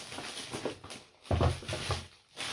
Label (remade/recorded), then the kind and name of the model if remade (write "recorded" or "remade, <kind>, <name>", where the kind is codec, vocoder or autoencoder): recorded